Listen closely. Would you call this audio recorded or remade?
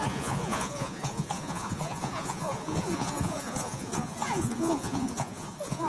remade